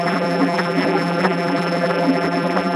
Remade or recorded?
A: remade